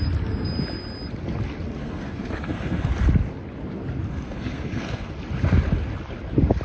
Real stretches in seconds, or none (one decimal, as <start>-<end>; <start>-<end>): 0.0-1.8; 2.9-4.1; 5.1-6.6